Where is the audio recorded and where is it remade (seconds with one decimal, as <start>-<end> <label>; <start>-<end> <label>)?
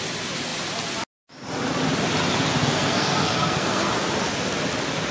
0.0-2.6 recorded; 2.6-3.9 remade; 3.9-5.1 recorded